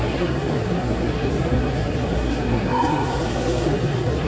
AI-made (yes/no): yes